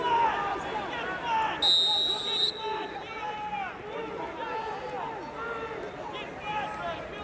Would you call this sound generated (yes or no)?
no